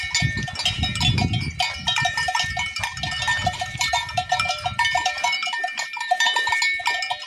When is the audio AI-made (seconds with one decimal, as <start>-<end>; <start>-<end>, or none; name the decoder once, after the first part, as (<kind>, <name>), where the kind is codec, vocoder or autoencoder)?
1.8-2.8 (vocoder, BigVGAN v2); 3.4-6.5